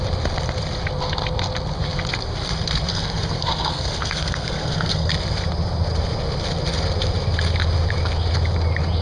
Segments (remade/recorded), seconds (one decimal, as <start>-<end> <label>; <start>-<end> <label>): 0.0-2.9 recorded; 2.9-5.1 remade; 5.1-9.0 recorded